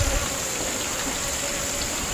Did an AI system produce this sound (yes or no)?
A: yes